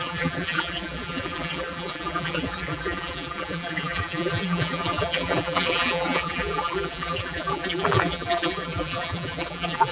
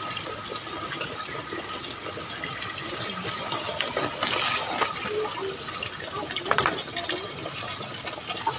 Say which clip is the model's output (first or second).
first